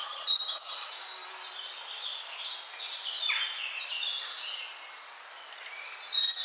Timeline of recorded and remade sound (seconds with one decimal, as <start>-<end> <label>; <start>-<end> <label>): 0.0-0.9 remade; 0.9-6.4 recorded